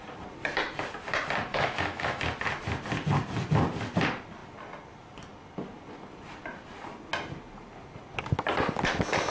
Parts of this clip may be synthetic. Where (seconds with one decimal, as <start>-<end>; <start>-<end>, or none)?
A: 1.5-2.2